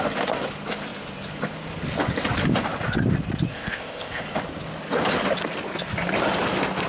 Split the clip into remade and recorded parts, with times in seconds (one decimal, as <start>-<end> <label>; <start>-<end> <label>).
0.0-3.5 recorded; 3.5-4.2 remade; 4.2-6.9 recorded